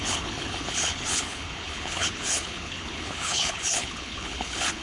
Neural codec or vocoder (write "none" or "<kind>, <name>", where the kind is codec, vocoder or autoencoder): codec, HILCodec